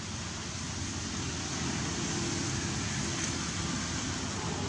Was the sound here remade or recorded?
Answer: recorded